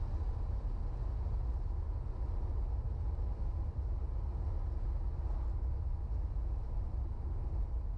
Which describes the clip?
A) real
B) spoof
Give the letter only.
A